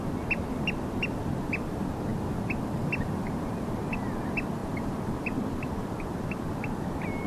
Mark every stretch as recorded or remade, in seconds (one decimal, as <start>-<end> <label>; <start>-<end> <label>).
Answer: 0.0-7.3 recorded